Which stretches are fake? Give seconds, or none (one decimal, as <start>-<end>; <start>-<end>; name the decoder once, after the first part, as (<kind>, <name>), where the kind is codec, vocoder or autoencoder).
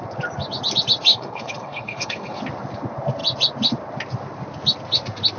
1.1-2.4 (codec, HILCodec)